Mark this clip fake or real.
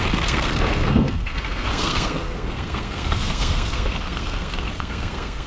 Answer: fake